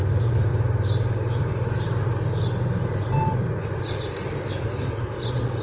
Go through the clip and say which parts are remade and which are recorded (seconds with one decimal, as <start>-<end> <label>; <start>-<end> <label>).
0.0-5.6 recorded